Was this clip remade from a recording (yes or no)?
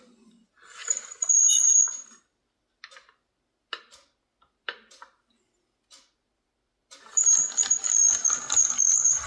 no